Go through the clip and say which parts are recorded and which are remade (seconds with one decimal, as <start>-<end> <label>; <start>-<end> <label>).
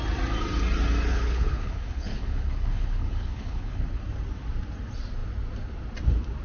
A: 0.0-1.1 recorded; 1.1-4.0 remade; 4.0-6.4 recorded